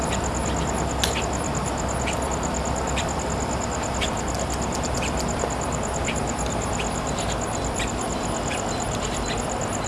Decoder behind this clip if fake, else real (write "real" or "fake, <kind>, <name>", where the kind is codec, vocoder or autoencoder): fake, vocoder, BigVGAN v2